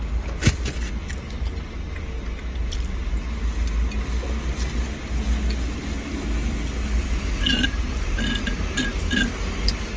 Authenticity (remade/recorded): recorded